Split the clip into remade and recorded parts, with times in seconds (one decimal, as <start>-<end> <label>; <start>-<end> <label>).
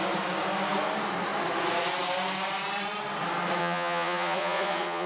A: 0.0-3.6 recorded; 3.6-5.1 remade